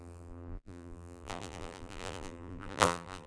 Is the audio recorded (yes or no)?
no